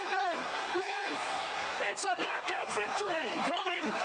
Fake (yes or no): yes